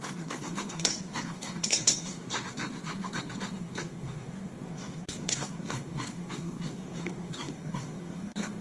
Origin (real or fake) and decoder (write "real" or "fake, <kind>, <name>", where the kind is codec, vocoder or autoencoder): fake, codec, SNAC